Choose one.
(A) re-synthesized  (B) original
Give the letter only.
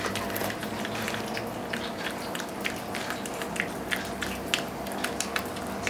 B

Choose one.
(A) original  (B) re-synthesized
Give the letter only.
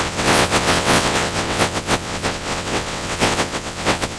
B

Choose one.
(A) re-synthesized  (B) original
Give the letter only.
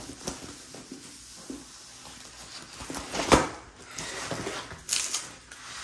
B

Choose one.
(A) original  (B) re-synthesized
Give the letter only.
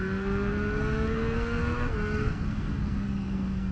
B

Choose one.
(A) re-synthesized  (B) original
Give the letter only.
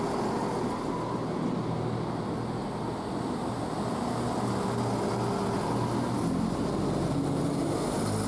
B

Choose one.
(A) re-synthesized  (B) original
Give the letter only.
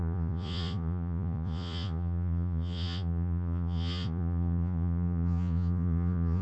A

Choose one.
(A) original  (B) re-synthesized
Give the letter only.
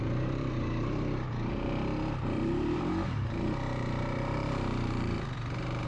B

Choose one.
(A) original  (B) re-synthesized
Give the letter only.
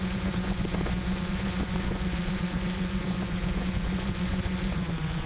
B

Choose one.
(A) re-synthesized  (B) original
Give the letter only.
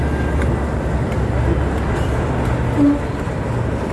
B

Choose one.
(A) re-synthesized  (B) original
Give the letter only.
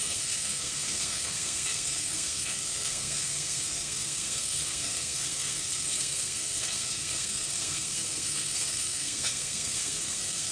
A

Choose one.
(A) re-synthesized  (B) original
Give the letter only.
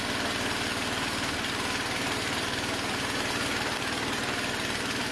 B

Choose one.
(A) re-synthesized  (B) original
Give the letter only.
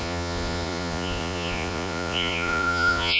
A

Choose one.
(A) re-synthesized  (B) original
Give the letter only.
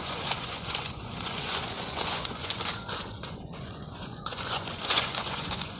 A